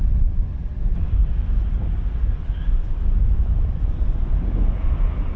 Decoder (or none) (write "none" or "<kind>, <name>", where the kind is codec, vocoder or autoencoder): none